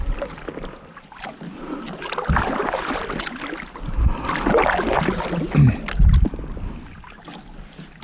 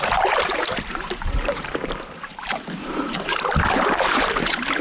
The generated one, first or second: second